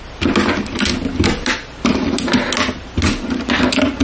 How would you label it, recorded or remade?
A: recorded